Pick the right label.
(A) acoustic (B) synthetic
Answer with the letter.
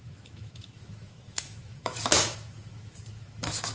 B